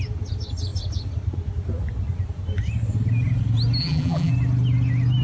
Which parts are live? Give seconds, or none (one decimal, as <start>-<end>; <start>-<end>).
0.0-3.8; 4.3-5.2